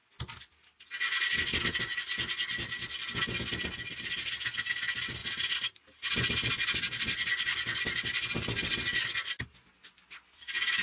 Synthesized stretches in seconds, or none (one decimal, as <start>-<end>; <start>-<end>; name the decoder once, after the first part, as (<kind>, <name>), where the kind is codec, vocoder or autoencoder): none